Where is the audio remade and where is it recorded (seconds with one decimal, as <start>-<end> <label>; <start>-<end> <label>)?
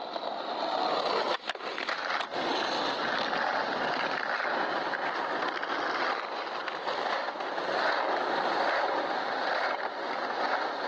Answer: 0.0-10.9 recorded